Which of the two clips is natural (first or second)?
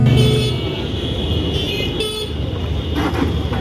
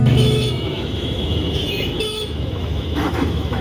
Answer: first